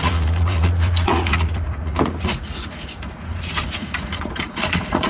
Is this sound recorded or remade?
remade